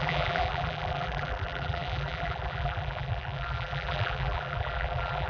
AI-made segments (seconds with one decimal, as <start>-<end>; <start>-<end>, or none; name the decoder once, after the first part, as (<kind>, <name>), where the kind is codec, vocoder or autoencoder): 0.0-5.3 (vocoder, BigVGAN v2)

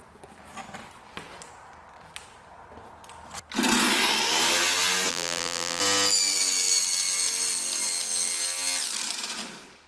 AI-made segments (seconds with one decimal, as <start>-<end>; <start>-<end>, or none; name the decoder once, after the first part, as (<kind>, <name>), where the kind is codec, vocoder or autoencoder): 5.1-5.8 (vocoder, BigVGAN v2)

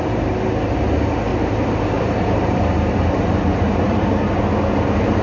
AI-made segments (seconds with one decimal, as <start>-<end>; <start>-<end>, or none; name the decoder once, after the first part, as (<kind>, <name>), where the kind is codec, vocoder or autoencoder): 1.3-4.4 (vocoder, BigVGAN v2)